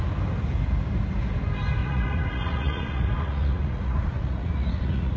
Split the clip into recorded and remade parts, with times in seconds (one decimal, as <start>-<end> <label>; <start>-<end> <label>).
0.0-1.8 recorded; 1.8-5.2 remade

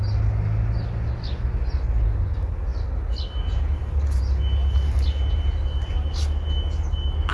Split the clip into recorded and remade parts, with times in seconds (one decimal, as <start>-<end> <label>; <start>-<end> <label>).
0.0-7.3 recorded

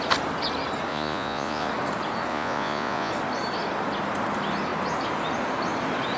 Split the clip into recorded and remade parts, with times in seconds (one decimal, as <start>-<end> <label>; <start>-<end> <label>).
0.0-0.9 recorded; 0.9-1.7 remade; 1.7-2.3 recorded; 2.3-3.1 remade; 3.1-6.2 recorded

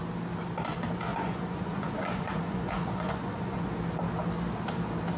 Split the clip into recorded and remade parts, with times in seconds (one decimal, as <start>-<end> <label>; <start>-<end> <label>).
0.0-1.1 recorded; 1.1-3.7 remade; 3.7-5.2 recorded

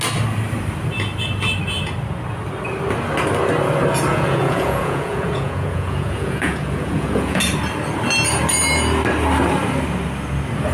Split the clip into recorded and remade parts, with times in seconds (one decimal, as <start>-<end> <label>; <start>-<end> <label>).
0.0-4.1 recorded; 4.1-7.4 remade; 7.4-10.7 recorded

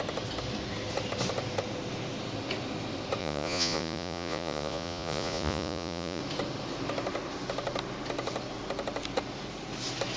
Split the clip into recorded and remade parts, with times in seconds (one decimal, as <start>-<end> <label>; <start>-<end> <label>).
0.0-3.2 recorded; 3.2-6.2 remade; 6.2-10.2 recorded

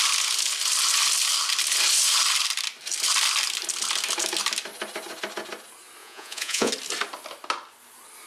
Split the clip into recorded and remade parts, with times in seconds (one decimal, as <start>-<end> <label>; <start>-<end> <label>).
0.0-6.0 recorded; 6.0-6.7 remade; 6.7-8.3 recorded

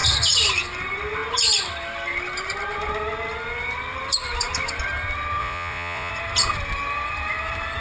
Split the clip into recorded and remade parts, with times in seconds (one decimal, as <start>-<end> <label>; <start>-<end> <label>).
0.0-5.4 recorded; 5.4-6.1 remade; 6.1-7.8 recorded